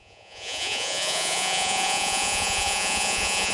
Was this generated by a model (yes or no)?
yes